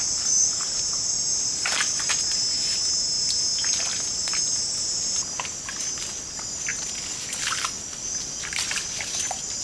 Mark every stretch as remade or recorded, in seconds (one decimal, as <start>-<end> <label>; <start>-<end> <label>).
0.0-1.3 recorded; 1.3-2.2 remade; 2.2-9.6 recorded